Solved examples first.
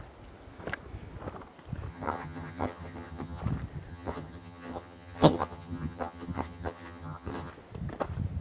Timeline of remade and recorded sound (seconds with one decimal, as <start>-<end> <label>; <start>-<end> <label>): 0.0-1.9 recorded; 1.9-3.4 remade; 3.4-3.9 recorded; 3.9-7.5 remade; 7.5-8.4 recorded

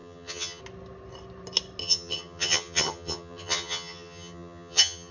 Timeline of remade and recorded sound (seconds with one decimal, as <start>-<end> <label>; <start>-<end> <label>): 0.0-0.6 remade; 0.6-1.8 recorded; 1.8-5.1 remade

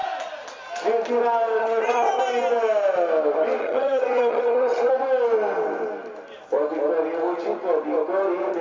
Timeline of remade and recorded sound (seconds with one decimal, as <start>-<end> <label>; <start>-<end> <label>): 0.0-1.6 recorded; 1.6-2.2 remade; 2.2-3.6 recorded; 3.6-4.9 remade; 4.9-8.6 recorded

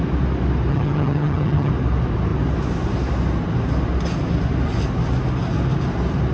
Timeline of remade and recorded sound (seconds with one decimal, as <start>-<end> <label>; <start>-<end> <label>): 0.0-0.7 recorded; 0.7-1.7 remade; 1.7-6.3 recorded

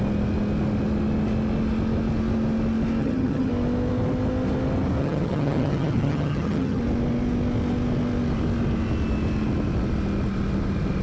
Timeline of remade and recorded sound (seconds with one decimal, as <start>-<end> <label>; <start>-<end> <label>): 0.0-3.0 recorded; 3.0-3.5 remade; 3.5-5.0 recorded; 5.0-6.8 remade; 6.8-11.0 recorded

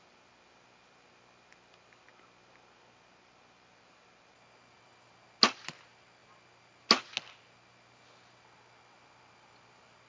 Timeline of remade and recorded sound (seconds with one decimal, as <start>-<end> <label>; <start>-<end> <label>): 0.0-10.1 recorded

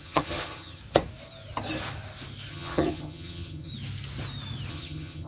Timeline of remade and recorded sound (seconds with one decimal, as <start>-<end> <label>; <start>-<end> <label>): 0.0-0.8 remade; 0.8-2.5 recorded; 2.5-3.7 remade; 3.7-4.7 recorded; 4.7-5.3 remade

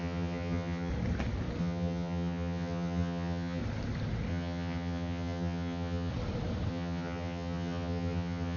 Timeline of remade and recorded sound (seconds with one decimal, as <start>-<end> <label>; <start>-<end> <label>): 0.0-0.9 remade; 0.9-1.6 recorded; 1.6-3.6 remade; 3.6-4.3 recorded; 4.3-6.1 remade; 6.1-6.7 recorded; 6.7-8.6 remade